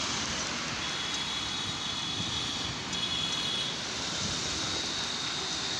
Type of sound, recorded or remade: recorded